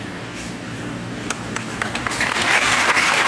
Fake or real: fake